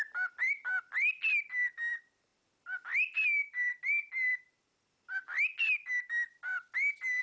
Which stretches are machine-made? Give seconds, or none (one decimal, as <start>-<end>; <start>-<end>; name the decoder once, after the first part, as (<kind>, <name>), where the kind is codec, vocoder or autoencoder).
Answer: none